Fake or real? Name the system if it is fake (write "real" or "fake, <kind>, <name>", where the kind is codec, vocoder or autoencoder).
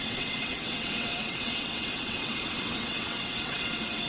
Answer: fake, vocoder, WaveNeXt